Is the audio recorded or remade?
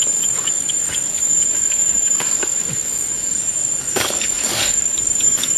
remade